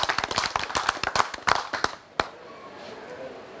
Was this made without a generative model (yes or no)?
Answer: yes